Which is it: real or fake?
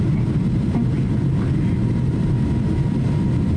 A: real